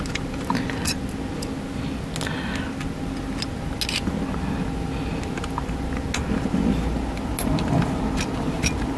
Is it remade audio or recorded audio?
recorded